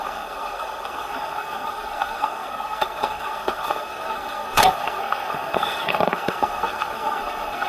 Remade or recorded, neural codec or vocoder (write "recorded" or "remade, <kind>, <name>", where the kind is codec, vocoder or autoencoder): remade, codec, SNAC